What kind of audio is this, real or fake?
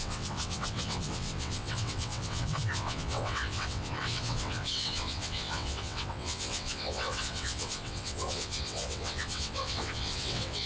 fake